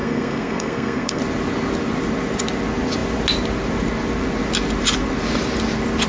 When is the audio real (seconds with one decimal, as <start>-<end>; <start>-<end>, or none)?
1.2-6.1